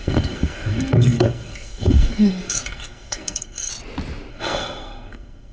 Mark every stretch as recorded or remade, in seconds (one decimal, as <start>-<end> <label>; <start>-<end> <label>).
0.0-3.7 remade; 3.7-4.3 recorded; 4.3-5.5 remade